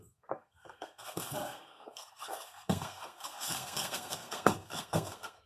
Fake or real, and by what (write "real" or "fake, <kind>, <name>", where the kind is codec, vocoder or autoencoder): fake, codec, SNAC